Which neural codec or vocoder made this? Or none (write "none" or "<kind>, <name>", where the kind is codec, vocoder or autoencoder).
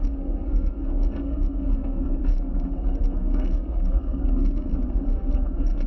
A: codec, SNAC